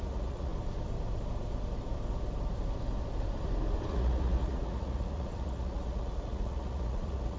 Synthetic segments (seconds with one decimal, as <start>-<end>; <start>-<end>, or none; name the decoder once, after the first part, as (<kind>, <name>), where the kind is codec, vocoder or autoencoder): 0.0-0.5 (vocoder, Vocos); 3.9-7.4